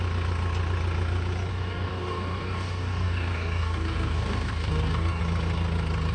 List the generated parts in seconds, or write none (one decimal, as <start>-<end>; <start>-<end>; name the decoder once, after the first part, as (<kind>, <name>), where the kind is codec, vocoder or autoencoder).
1.5-5.2 (codec, DAC)